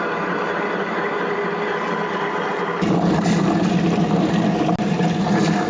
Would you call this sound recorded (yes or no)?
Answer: yes